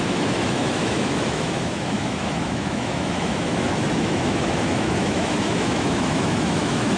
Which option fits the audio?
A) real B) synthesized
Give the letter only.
B